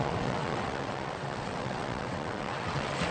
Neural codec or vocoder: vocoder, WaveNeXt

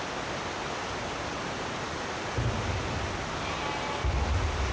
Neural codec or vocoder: none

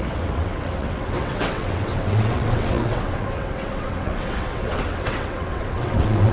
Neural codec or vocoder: vocoder, WaveNeXt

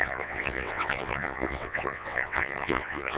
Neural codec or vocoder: vocoder, WaveNeXt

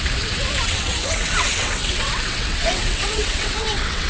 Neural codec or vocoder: vocoder, WaveNeXt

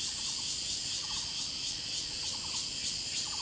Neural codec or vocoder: none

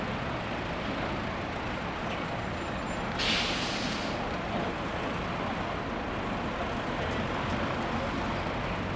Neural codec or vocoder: none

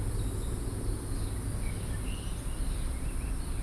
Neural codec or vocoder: none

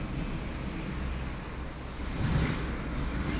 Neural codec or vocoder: none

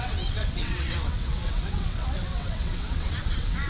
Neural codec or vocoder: vocoder, WaveNeXt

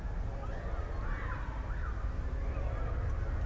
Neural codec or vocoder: none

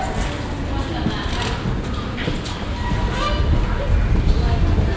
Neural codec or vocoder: none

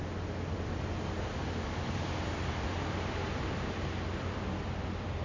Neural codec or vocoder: none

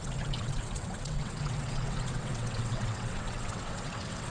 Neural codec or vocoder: vocoder, WaveNeXt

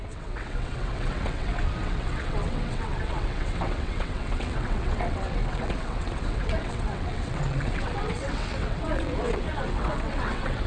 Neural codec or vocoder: vocoder, WaveNeXt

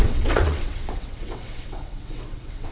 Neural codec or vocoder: vocoder, WaveNeXt